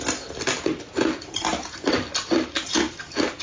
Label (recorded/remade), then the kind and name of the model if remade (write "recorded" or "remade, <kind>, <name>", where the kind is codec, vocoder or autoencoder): recorded